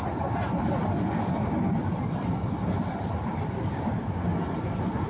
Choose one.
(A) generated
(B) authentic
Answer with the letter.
B